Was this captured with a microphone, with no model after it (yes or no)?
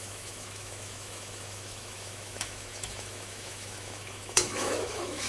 no